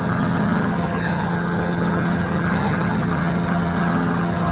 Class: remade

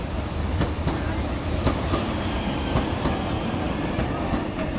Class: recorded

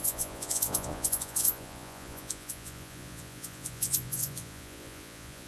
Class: remade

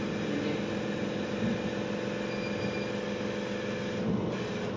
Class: recorded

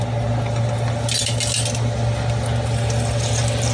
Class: recorded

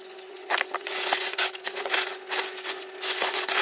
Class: remade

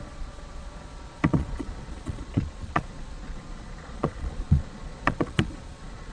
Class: remade